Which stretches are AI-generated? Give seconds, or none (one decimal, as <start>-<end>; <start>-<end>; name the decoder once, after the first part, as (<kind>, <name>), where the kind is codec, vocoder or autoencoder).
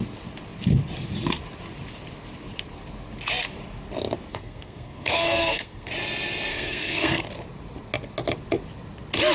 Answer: 4.3-5.9 (codec, SNAC); 6.5-7.2